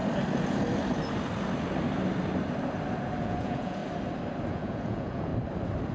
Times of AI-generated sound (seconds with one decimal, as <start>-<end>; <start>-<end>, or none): 3.2-3.8; 4.5-5.3